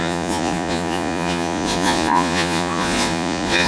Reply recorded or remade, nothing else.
remade